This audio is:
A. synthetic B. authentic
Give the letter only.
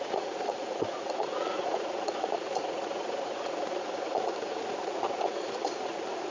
A